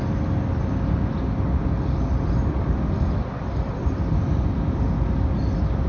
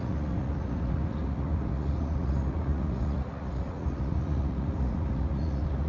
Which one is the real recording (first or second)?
first